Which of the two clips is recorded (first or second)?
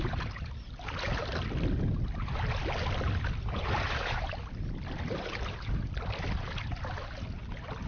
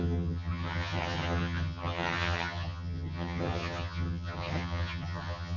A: first